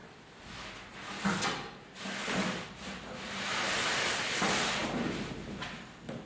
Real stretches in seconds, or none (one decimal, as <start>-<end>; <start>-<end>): 0.0-6.3